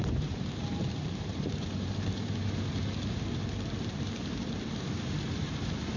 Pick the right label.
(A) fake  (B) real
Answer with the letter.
A